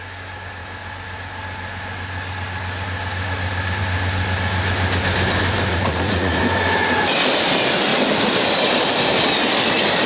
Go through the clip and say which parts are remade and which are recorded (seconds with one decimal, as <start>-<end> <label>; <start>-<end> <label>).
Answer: 0.0-5.7 recorded; 5.7-6.4 remade; 6.4-10.1 recorded